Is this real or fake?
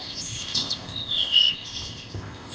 fake